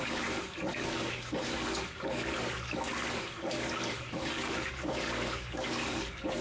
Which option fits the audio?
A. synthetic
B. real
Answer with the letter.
A